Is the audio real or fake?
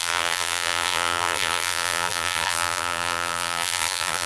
fake